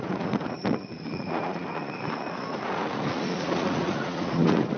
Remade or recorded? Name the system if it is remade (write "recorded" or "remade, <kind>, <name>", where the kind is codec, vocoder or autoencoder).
remade, vocoder, Vocos